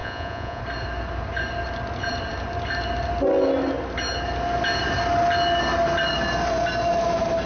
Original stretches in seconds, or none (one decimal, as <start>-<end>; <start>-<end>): 0.6-7.5